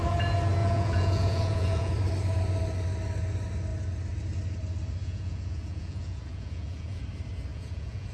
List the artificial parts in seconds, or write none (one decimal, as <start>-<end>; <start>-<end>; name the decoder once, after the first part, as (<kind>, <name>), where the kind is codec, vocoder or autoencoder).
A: 0.6-1.9 (vocoder, Vocos); 5.0-7.0; 7.5-8.1